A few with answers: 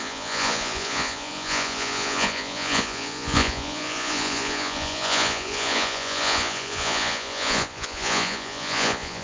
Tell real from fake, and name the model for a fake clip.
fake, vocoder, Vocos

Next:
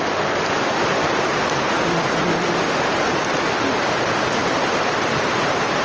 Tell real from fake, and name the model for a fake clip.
real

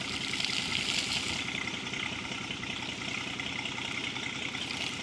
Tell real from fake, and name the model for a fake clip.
real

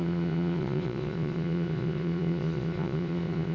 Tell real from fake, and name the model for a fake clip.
fake, vocoder, Vocos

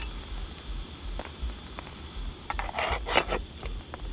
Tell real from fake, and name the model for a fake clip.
real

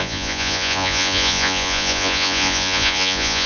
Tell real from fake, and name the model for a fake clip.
fake, vocoder, Vocos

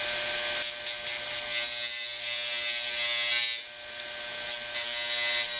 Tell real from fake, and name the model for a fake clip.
real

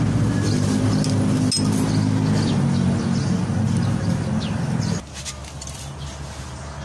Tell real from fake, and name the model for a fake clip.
real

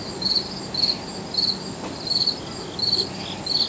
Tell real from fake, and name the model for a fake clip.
real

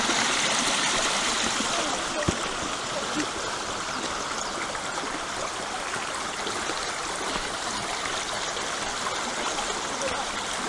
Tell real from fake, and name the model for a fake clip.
real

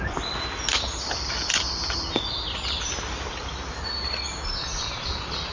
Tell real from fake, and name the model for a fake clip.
real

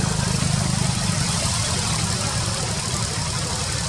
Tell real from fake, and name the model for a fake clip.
real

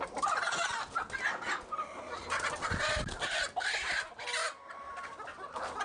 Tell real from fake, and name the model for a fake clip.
real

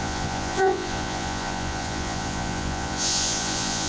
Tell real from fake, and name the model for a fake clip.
fake, vocoder, Vocos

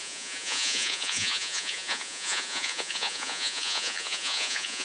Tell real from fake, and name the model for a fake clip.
fake, vocoder, Vocos